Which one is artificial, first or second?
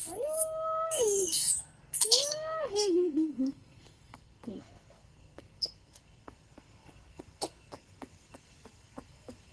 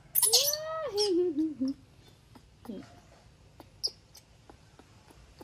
first